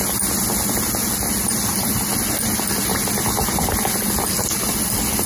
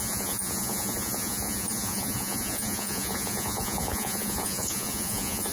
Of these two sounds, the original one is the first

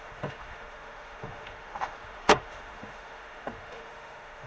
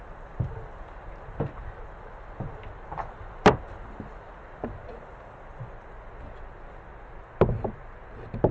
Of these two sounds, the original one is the second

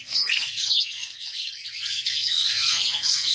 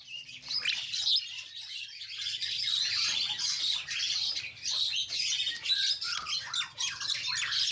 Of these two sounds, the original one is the second